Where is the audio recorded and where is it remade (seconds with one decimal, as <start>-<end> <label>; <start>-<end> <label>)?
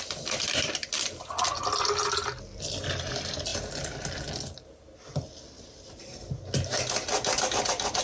0.0-8.0 recorded